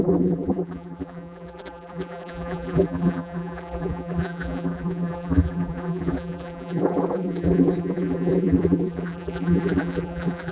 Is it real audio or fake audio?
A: fake